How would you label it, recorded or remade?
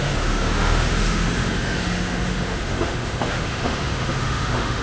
remade